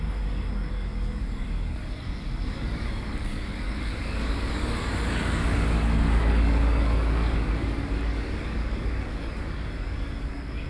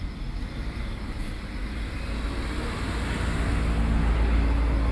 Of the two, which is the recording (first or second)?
second